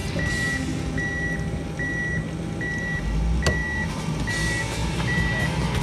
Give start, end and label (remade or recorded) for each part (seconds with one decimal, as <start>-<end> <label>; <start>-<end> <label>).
0.0-4.8 recorded; 4.8-5.8 remade